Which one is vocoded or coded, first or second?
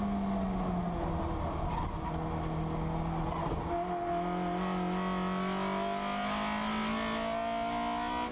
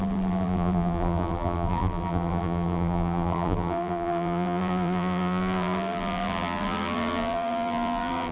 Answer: second